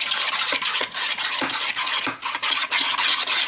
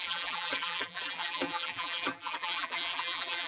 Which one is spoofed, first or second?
second